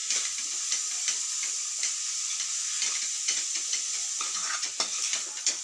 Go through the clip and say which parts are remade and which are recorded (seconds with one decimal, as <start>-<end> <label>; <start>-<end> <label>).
0.0-3.0 recorded; 3.0-4.7 remade; 4.7-5.6 recorded

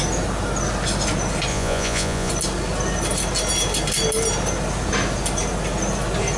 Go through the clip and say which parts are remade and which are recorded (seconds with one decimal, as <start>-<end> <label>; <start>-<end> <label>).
0.0-1.5 recorded; 1.5-2.3 remade; 2.3-6.4 recorded

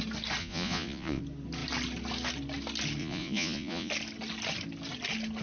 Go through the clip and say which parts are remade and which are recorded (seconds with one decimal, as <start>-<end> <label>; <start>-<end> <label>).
0.0-0.4 recorded; 0.4-1.2 remade; 1.2-3.0 recorded; 3.0-3.9 remade; 3.9-5.4 recorded

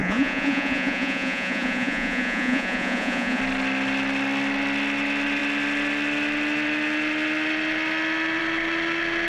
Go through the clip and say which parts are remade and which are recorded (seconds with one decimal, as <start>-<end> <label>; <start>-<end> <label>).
0.0-3.4 remade; 3.4-9.3 recorded

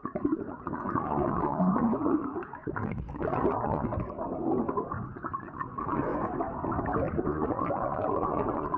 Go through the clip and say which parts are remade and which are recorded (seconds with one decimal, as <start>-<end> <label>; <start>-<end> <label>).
0.0-3.9 remade; 3.9-5.1 recorded; 5.1-6.1 remade; 6.1-7.1 recorded; 7.1-8.8 remade

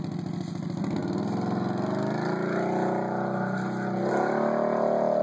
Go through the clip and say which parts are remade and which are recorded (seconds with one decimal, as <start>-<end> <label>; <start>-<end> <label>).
0.0-5.2 recorded

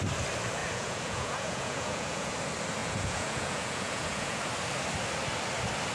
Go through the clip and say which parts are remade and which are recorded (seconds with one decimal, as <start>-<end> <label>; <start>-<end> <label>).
0.0-0.6 recorded; 0.6-2.3 remade; 2.3-2.8 recorded; 2.8-4.4 remade; 4.4-5.9 recorded

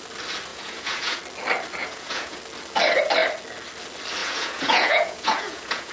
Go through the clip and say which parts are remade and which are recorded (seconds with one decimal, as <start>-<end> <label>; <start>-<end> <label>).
0.0-0.5 recorded; 0.5-1.2 remade; 1.2-1.8 recorded; 1.8-2.4 remade; 2.4-4.2 recorded; 4.2-5.9 remade